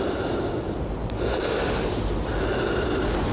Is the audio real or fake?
real